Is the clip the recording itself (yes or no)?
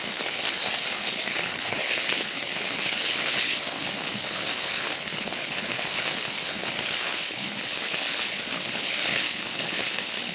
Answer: no